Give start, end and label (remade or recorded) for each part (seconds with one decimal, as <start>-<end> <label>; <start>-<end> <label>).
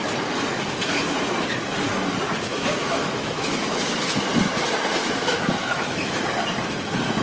0.0-2.5 recorded; 2.5-4.3 remade; 4.3-5.0 recorded; 5.0-6.2 remade; 6.2-7.2 recorded